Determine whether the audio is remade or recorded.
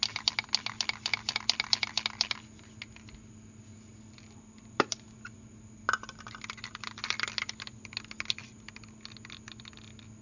recorded